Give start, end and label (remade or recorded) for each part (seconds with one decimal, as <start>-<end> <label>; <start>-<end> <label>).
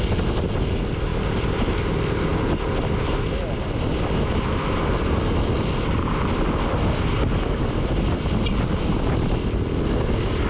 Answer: 0.0-10.5 recorded